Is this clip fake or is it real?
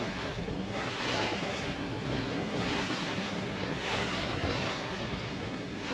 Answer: fake